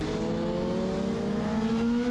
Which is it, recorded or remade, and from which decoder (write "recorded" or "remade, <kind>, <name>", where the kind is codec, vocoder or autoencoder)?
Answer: recorded